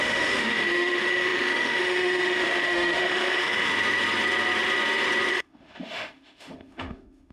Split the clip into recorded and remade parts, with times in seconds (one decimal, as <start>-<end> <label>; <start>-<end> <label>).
0.0-3.7 remade; 3.7-5.3 recorded; 5.3-7.3 remade

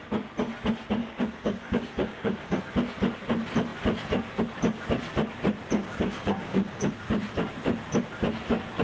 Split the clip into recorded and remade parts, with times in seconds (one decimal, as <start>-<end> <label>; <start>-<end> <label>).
0.0-1.0 recorded; 1.0-2.6 remade; 2.6-5.8 recorded; 5.8-6.9 remade; 6.9-8.8 recorded

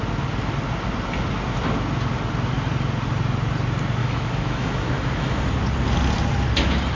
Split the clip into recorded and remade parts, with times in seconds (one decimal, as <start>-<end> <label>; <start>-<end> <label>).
0.0-4.0 recorded; 4.0-5.4 remade; 5.4-6.9 recorded

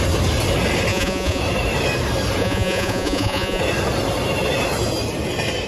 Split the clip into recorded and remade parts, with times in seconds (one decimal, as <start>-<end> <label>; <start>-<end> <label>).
0.0-0.9 recorded; 0.9-1.4 remade; 1.4-2.4 recorded; 2.4-3.6 remade; 3.6-5.7 recorded

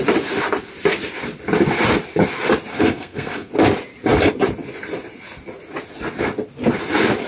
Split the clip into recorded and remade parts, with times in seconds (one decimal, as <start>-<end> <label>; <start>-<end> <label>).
0.0-2.7 recorded; 2.7-3.5 remade; 3.5-7.3 recorded

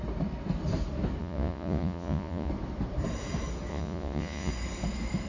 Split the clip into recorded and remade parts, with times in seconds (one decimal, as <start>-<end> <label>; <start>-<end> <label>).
0.0-1.2 recorded; 1.2-2.5 remade; 2.5-3.7 recorded; 3.7-4.5 remade; 4.5-5.3 recorded

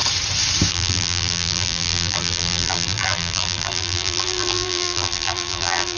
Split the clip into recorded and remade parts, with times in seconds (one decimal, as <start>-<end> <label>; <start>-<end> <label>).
0.0-0.7 recorded; 0.7-6.0 remade